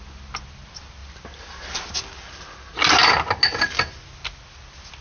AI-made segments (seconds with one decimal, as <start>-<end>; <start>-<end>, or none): none